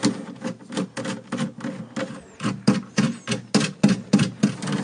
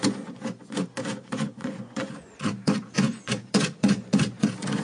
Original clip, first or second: first